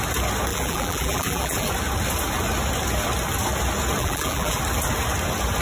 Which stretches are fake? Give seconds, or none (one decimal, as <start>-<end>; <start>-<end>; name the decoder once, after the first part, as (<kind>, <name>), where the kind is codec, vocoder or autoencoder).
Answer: 0.5-1.7 (vocoder, BigVGAN v2); 4.0-4.6